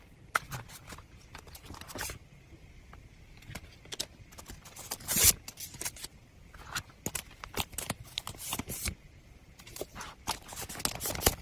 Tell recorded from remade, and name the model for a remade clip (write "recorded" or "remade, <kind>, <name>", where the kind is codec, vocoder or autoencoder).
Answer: recorded